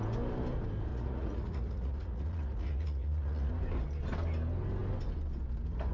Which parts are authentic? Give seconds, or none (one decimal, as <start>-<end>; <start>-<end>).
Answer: 0.0-0.9; 3.5-5.9